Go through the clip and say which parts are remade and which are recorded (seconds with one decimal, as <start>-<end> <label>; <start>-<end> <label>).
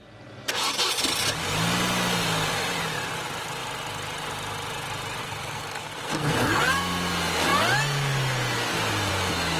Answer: 0.0-5.2 recorded; 5.2-6.6 remade; 6.6-9.6 recorded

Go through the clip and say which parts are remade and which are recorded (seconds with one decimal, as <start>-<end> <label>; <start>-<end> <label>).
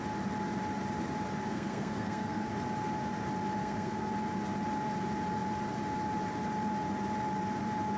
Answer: 0.0-1.5 recorded; 1.5-2.5 remade; 2.5-3.6 recorded; 3.6-4.1 remade; 4.1-8.0 recorded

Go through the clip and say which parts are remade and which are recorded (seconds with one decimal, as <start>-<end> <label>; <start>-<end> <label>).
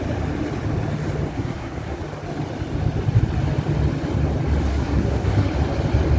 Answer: 0.0-1.3 recorded; 1.3-2.0 remade; 2.0-4.7 recorded; 4.7-5.5 remade; 5.5-6.2 recorded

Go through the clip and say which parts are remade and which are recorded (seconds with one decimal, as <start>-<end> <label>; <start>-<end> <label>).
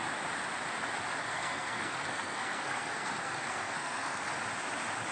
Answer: 0.0-1.2 recorded; 1.2-4.3 remade; 4.3-5.1 recorded